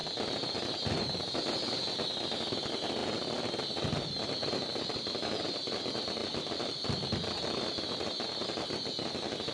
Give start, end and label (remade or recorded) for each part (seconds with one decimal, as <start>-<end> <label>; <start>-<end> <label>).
0.0-6.2 recorded; 6.2-8.0 remade; 8.0-9.5 recorded